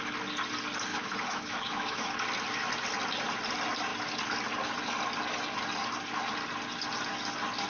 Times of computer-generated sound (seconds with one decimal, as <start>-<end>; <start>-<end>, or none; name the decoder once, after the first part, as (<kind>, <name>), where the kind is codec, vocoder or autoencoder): 0.9-2.1 (autoencoder, DAC-VAE)

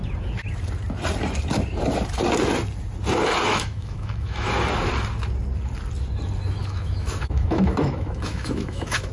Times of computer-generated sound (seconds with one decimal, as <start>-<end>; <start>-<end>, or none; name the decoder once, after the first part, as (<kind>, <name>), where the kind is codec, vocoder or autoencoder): 3.5-4.5 (autoencoder, DAC-VAE); 6.6-9.1

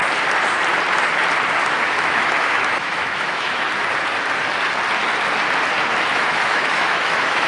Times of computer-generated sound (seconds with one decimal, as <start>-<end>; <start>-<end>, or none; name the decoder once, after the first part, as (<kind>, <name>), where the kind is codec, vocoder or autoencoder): 1.6-3.7 (autoencoder, DAC-VAE); 6.1-7.5

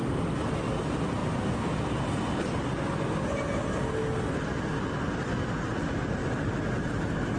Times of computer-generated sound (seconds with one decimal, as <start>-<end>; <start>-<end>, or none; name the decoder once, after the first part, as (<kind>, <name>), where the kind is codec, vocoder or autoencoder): none

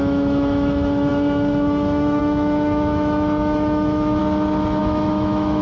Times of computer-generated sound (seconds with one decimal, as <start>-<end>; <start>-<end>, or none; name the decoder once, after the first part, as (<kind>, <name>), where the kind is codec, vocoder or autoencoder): 0.0-4.2 (autoencoder, DAC-VAE); 4.8-5.6